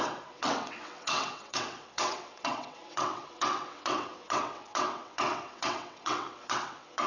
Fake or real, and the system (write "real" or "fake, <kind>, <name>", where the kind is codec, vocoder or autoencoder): fake, vocoder, WaveNeXt